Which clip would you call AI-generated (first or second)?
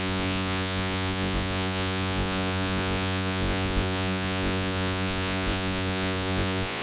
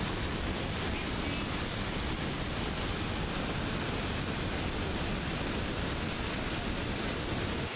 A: first